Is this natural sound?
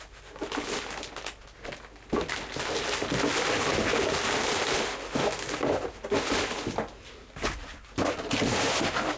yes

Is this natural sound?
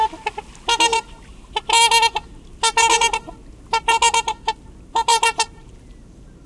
yes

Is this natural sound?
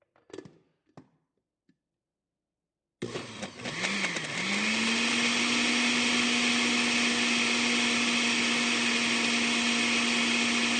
yes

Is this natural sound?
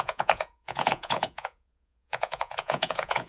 no